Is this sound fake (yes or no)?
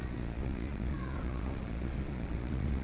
yes